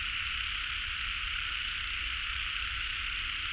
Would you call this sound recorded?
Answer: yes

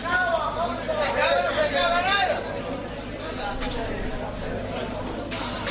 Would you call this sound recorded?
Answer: yes